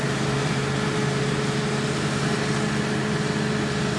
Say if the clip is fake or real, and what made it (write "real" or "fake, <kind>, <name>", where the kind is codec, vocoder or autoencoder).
real